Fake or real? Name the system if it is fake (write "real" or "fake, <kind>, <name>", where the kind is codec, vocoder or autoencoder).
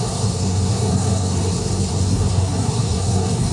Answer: fake, codec, SNAC